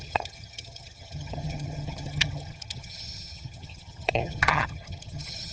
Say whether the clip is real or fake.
fake